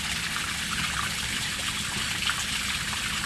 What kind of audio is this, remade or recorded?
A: recorded